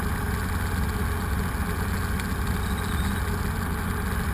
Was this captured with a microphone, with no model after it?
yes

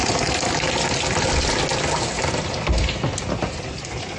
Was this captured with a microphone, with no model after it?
yes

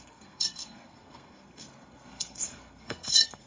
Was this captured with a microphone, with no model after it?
no